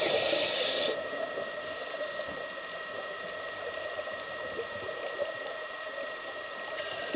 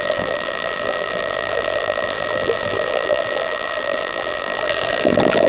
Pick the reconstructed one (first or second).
second